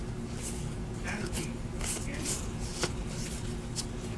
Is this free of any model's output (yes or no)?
yes